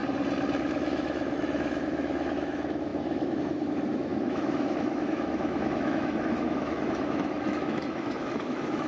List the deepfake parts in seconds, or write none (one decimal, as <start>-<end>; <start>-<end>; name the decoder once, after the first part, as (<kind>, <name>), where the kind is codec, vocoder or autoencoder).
0.6-8.9 (autoencoder, DAC-VAE)